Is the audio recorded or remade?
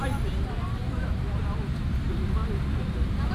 recorded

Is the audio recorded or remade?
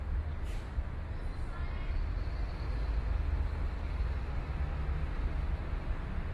recorded